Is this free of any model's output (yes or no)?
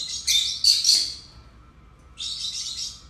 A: yes